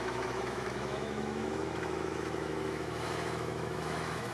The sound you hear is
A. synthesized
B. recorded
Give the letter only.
A